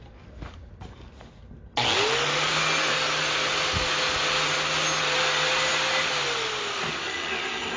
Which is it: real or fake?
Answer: real